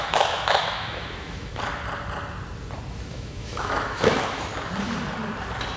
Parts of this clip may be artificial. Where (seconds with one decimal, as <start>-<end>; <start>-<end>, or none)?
0.0-1.5; 3.1-4.5